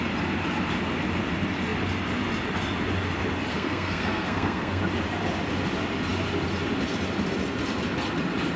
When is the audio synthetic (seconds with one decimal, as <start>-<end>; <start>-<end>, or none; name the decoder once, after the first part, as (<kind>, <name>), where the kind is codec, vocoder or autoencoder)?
3.5-4.8 (codec, SNAC)